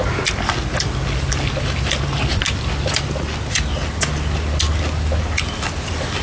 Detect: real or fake real